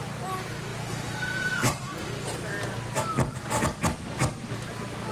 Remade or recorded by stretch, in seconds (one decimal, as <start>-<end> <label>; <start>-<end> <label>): 0.0-0.7 recorded; 0.7-1.6 remade; 1.6-5.1 recorded